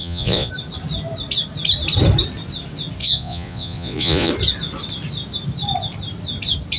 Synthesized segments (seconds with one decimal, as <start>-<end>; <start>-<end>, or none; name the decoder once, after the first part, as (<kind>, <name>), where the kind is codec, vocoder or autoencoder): 0.0-0.5 (vocoder, Vocos); 3.0-4.3